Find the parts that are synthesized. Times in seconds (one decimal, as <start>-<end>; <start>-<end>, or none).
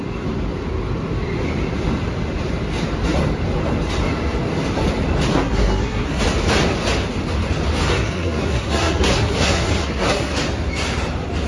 5.3-6.2; 7.9-10.3